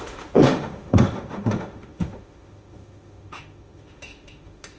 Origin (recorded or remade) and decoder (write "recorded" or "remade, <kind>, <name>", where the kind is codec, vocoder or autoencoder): remade, autoencoder, DAC-VAE